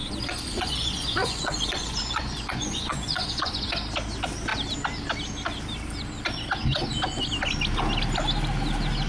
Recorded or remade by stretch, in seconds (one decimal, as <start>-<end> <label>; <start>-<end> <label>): 0.0-3.7 remade; 3.7-9.1 recorded